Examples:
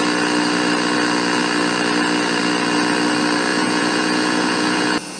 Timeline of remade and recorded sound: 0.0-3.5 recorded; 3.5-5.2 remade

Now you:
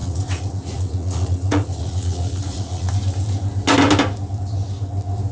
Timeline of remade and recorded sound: 0.0-2.9 remade; 2.9-5.3 recorded